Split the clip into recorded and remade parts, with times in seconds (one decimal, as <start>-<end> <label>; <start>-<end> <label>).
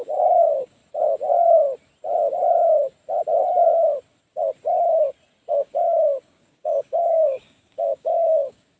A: 0.0-0.8 remade; 0.8-5.5 recorded; 5.5-8.8 remade